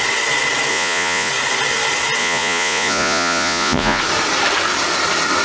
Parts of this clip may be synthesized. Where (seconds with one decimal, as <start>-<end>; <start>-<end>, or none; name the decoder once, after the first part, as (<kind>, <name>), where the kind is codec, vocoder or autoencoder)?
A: 0.7-1.3 (vocoder, Vocos); 2.2-4.0